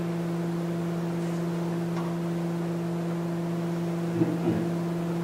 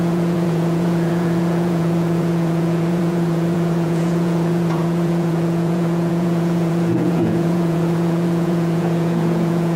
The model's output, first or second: second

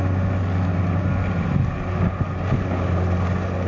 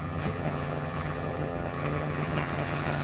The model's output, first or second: second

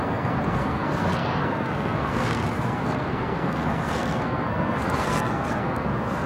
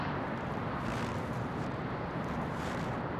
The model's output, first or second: first